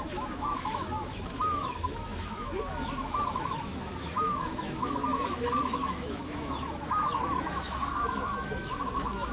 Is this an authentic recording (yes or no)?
no